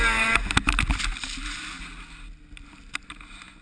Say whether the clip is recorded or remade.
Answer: recorded